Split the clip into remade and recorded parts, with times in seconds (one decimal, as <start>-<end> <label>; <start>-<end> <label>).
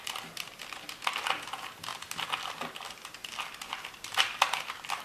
0.0-5.0 recorded